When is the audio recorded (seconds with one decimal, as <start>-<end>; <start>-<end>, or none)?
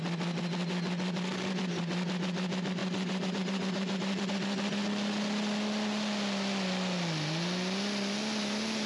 0.0-1.3; 1.8-2.8; 4.2-8.9